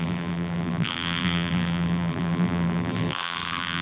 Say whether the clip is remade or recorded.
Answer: remade